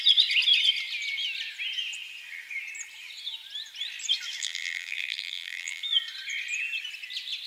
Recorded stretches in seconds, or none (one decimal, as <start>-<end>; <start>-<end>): 0.0-4.4; 5.8-7.5